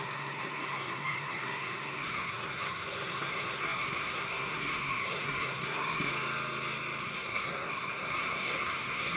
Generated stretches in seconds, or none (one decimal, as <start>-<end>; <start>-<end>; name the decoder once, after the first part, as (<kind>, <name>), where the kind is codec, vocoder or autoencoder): 0.0-6.1 (codec, SNAC); 7.0-9.2